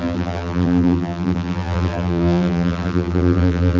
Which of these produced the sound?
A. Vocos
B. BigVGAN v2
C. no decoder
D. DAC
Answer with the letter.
B